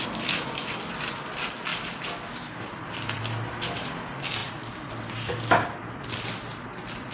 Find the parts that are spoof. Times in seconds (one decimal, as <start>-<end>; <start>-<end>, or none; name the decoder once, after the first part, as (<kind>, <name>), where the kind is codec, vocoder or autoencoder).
none

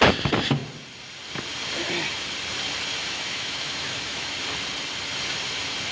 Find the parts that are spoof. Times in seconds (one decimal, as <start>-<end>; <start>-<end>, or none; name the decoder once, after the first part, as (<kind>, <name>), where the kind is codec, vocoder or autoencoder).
3.0-4.3 (autoencoder, DAC-VAE)

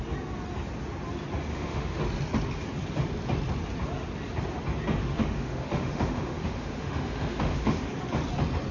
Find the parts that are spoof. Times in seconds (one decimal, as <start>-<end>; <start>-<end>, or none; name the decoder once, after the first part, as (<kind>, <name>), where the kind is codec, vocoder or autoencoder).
1.5-2.0 (autoencoder, DAC-VAE); 5.0-7.9

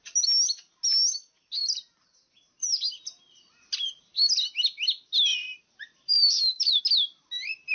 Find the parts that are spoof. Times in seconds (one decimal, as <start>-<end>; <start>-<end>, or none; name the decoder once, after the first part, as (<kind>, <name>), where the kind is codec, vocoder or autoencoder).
5.3-6.8 (vocoder, BigVGAN v2)

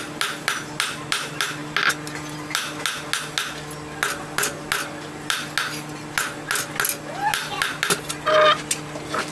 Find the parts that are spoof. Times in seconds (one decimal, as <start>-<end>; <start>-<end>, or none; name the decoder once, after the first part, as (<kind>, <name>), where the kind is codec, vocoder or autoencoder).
none

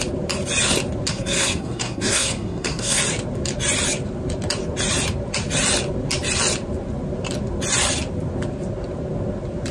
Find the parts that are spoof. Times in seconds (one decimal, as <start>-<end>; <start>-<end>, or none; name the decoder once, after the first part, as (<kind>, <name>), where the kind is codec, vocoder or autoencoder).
1.1-3.0 (codec, SNAC)

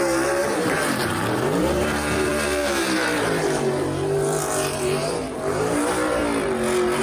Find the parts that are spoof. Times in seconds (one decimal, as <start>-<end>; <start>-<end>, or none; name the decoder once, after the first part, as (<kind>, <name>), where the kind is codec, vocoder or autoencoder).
0.0-6.2 (vocoder, BigVGAN v2)